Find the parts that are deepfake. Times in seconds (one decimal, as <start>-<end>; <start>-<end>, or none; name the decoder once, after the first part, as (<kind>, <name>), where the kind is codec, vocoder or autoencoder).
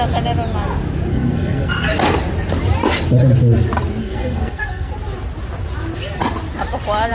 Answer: 1.1-1.7 (codec, SNAC); 4.0-4.9